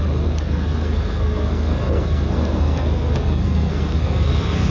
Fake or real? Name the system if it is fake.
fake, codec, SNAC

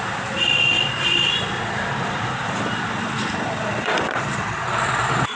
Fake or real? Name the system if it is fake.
fake, vocoder, BigVGAN v2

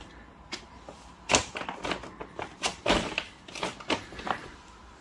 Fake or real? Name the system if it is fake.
real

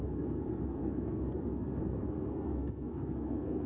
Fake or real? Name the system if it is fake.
fake, codec, SNAC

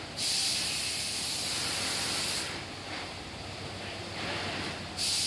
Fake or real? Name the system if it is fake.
real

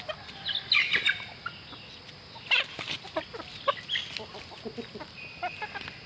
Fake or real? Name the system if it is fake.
real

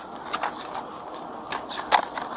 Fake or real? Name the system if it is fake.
real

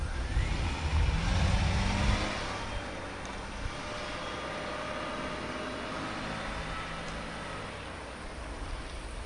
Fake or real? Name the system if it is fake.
real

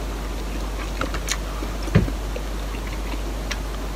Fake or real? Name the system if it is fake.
real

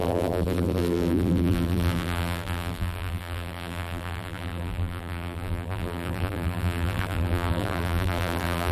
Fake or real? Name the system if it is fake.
fake, vocoder, BigVGAN v2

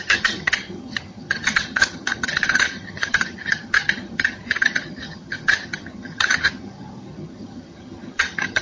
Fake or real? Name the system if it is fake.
fake, vocoder, HiFi-GAN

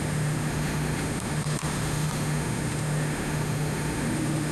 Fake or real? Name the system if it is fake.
fake, autoencoder, DAC-VAE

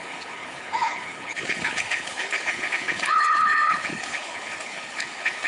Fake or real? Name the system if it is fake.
fake, codec, HILCodec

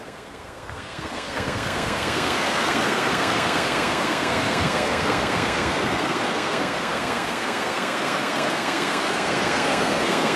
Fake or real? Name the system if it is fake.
fake, codec, SNAC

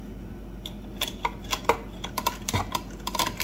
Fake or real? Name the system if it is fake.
real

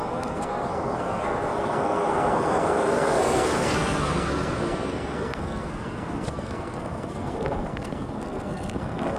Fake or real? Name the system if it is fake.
fake, codec, SNAC